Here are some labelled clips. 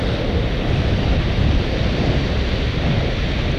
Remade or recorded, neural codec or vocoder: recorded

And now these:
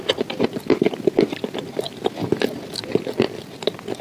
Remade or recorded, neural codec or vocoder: recorded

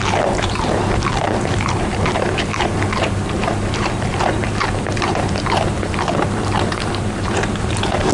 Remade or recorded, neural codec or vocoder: remade, vocoder, BigVGAN v2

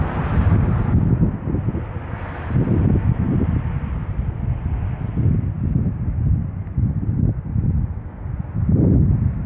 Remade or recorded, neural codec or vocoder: recorded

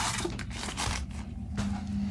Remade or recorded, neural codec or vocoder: recorded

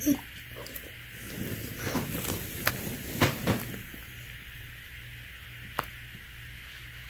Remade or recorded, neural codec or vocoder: recorded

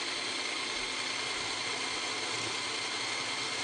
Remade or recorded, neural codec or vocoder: recorded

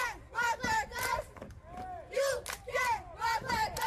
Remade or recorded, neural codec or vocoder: recorded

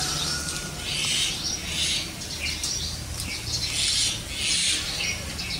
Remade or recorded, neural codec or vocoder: recorded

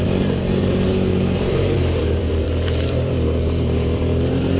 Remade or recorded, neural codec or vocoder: remade, vocoder, BigVGAN v2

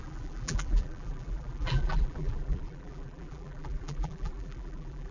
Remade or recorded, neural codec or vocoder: remade, vocoder, BigVGAN v2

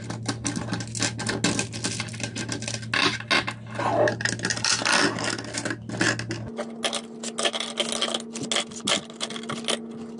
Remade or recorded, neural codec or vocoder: recorded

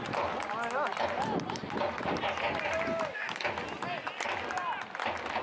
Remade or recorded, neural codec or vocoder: recorded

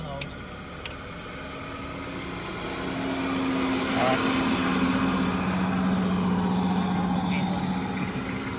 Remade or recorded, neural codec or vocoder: recorded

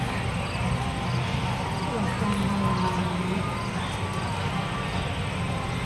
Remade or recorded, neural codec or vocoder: recorded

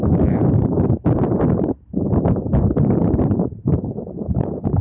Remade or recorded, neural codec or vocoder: remade, vocoder, BigVGAN v2